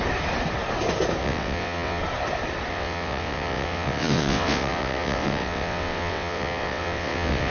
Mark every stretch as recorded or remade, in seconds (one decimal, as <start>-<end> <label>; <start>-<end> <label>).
0.0-1.2 recorded; 1.2-2.0 remade; 2.0-2.7 recorded; 2.7-7.5 remade